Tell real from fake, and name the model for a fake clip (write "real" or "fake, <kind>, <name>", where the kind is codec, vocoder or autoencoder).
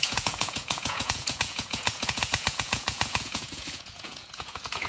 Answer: fake, vocoder, Vocos